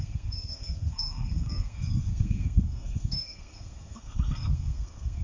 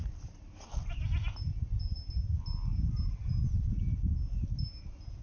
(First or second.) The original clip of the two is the second